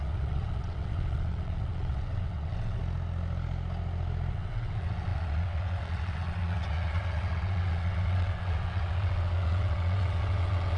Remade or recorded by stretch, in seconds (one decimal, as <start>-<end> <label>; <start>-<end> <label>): 0.0-2.8 remade; 2.8-4.3 recorded; 4.3-10.8 remade